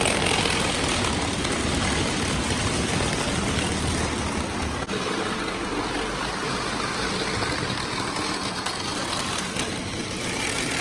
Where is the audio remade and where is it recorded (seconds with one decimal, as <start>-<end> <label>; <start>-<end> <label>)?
0.0-10.8 recorded